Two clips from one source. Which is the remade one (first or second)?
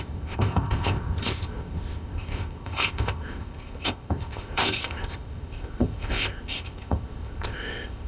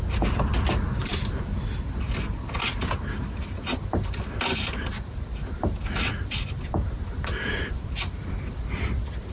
first